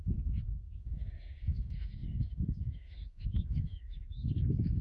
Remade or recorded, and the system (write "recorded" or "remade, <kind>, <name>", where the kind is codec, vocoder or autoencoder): remade, autoencoder, DAC-VAE